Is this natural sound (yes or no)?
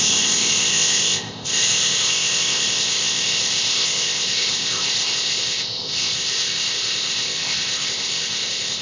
no